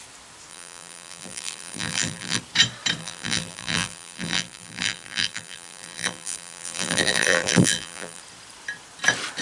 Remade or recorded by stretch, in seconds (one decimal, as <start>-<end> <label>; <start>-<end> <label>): 0.0-0.5 recorded; 0.5-2.4 remade; 2.4-3.0 recorded; 3.0-8.2 remade; 8.2-9.4 recorded